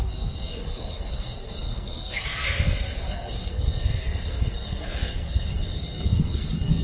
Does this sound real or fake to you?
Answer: fake